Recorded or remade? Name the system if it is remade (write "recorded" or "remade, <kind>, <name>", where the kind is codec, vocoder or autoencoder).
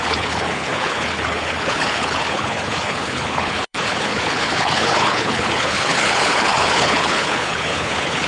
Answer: remade, codec, HILCodec